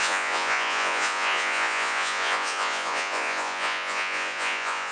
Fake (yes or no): yes